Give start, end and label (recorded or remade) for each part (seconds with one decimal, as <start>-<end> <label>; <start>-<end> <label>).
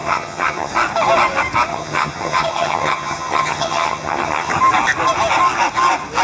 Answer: 0.0-0.7 remade; 0.7-1.7 recorded; 1.7-4.5 remade; 4.5-6.2 recorded